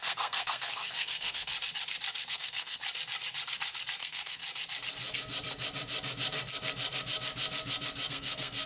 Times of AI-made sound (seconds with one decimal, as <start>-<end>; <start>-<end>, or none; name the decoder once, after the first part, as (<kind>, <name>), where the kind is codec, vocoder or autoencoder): 0.0-1.5 (codec, SNAC); 2.3-2.8; 4.0-4.4; 8.1-8.7